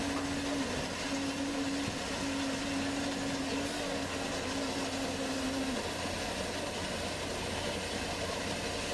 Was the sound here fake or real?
real